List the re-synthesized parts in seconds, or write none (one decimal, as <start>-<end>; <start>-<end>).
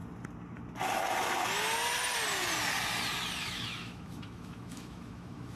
3.4-5.6